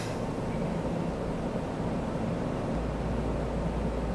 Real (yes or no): yes